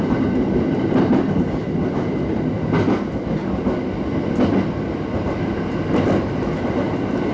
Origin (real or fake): real